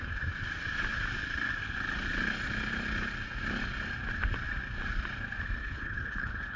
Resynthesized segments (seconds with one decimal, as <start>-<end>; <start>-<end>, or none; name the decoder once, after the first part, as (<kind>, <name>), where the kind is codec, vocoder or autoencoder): 5.6-6.6 (codec, HILCodec)